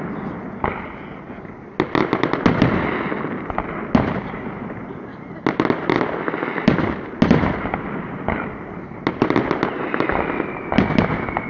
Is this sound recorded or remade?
recorded